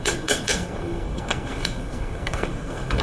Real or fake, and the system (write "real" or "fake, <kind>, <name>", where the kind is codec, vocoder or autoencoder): fake, codec, SNAC